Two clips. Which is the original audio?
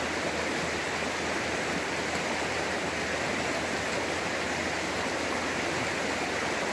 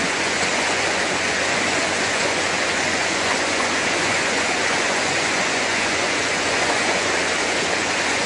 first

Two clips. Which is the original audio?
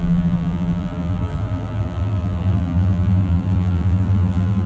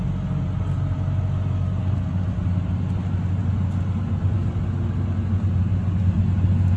second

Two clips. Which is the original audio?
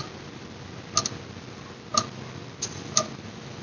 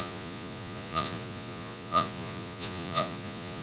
first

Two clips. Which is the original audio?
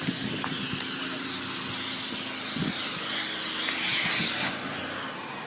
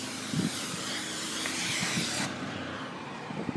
first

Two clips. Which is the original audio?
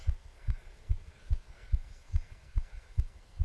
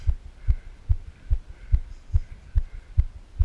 second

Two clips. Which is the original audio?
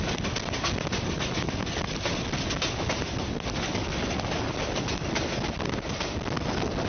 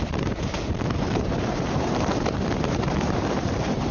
first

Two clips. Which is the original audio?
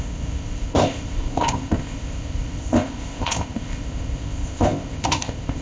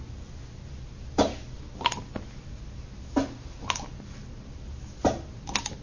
second